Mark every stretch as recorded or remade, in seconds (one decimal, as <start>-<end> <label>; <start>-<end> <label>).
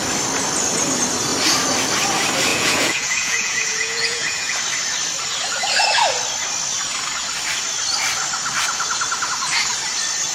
0.0-2.5 recorded; 2.5-4.6 remade; 4.6-10.3 recorded